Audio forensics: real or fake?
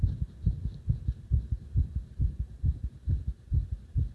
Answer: fake